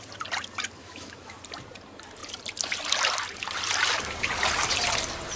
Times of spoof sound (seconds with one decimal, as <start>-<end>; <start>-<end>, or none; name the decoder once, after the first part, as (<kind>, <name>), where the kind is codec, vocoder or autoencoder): 0.8-1.4 (autoencoder, DAC-VAE)